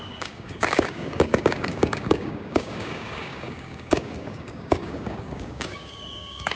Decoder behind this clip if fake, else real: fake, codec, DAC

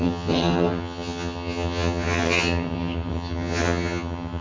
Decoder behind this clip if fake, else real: fake, vocoder, HiFi-GAN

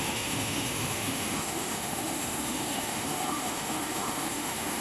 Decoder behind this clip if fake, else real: fake, autoencoder, DAC-VAE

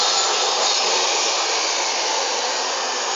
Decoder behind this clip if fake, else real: real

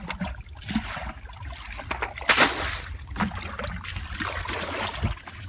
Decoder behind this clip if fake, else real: real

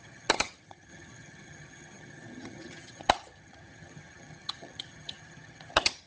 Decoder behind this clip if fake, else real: fake, vocoder, HiFi-GAN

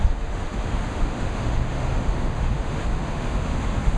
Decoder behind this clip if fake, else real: fake, autoencoder, DAC-VAE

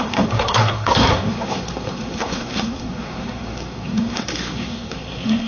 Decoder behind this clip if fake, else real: fake, codec, SNAC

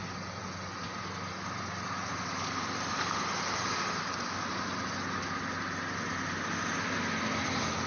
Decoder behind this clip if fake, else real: real